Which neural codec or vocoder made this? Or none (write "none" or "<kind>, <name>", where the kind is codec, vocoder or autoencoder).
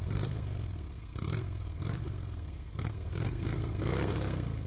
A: codec, SNAC